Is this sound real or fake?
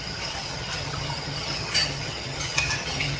fake